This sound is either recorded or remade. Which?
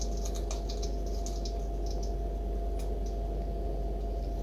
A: recorded